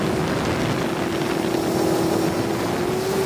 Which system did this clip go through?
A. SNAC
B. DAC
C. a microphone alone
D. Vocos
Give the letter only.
C